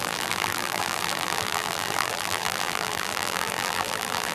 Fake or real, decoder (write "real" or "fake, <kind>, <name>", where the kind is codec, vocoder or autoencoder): fake, vocoder, BigVGAN v2